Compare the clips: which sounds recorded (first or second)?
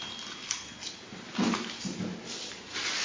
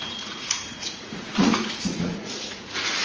first